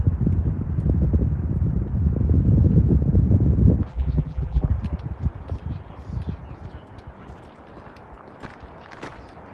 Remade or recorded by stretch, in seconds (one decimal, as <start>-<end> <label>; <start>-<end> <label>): 0.0-3.9 recorded; 3.9-4.7 remade; 4.7-9.5 recorded

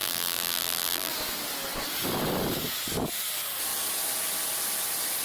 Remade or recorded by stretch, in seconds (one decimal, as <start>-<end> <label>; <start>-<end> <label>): 0.0-1.1 remade; 1.1-5.2 recorded

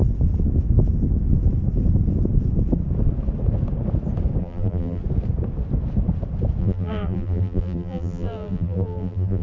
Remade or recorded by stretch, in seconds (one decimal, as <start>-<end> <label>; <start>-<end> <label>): 0.0-4.4 recorded; 4.4-5.0 remade; 5.0-6.6 recorded; 6.6-9.4 remade